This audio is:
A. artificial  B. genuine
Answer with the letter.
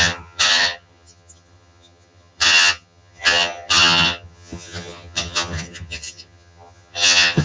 A